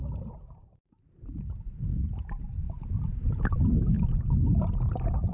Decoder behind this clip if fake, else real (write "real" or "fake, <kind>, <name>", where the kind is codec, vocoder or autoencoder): real